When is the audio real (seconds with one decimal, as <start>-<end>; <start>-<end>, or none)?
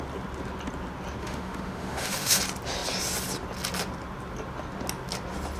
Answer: 0.0-1.2; 2.4-5.6